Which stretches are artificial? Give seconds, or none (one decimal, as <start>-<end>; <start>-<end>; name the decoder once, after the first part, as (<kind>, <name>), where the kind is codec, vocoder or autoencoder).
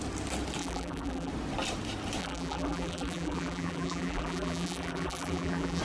0.6-1.3 (vocoder, BigVGAN v2); 2.2-5.8